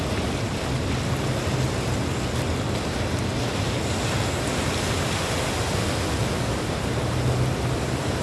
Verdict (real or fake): real